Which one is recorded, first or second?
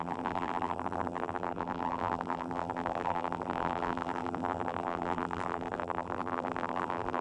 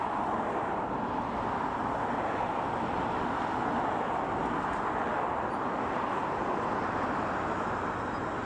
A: second